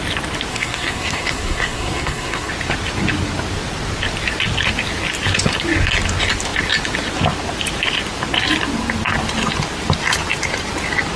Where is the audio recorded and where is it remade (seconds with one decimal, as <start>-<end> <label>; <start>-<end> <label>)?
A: 0.0-0.5 recorded; 0.5-2.5 remade; 2.5-11.2 recorded